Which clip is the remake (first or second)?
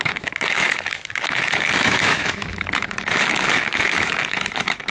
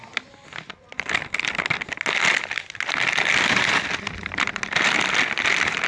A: first